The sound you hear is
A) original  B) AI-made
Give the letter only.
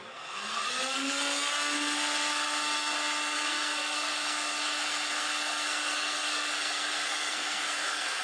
B